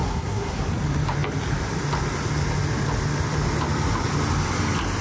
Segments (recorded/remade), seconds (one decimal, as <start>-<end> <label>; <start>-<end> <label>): 0.0-0.7 remade; 0.7-5.0 recorded